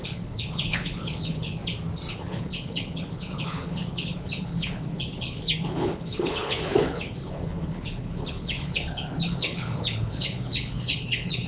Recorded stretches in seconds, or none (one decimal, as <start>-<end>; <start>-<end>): 1.6-2.1